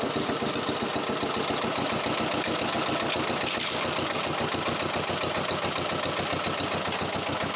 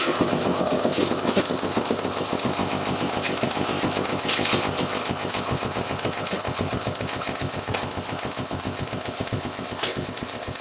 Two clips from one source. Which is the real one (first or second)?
first